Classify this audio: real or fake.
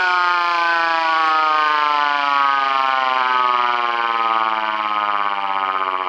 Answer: fake